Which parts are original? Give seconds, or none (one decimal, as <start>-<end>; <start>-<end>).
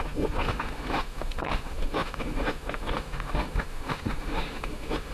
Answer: none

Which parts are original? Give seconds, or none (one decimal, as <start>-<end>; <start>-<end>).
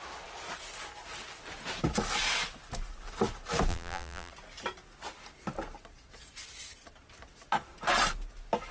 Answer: 0.0-3.7; 4.3-8.7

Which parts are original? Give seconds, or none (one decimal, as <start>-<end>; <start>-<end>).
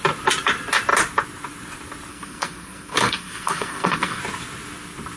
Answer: 0.0-2.1; 4.2-5.2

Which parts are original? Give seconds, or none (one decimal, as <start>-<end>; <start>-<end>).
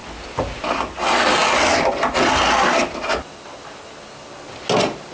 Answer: 0.0-5.1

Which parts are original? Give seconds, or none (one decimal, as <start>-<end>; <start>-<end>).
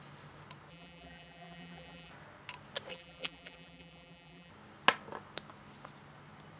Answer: 0.0-0.7; 2.1-2.9; 4.5-6.6